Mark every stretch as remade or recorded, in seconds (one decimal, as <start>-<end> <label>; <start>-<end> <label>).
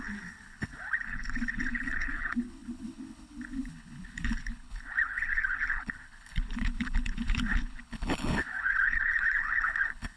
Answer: 0.0-10.2 remade